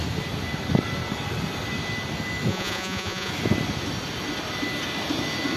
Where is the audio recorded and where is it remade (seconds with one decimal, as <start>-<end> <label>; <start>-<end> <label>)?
0.0-2.5 recorded; 2.5-3.3 remade; 3.3-5.6 recorded